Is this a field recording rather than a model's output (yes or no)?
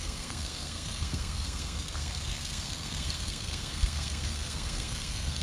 no